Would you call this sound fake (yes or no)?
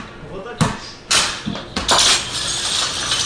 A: no